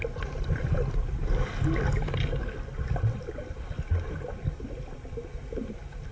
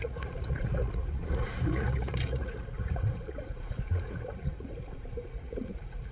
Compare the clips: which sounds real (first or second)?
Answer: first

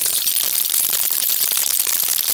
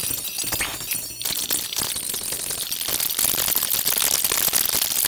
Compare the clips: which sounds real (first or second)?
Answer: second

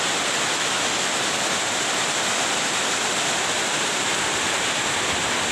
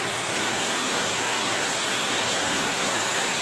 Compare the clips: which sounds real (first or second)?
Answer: first